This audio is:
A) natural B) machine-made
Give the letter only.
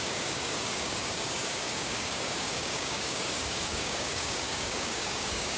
B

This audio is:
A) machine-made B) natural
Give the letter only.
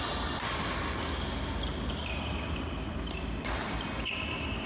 B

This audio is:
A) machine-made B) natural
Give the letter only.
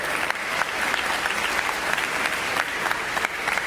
B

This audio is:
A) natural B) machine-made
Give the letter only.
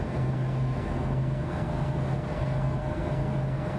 B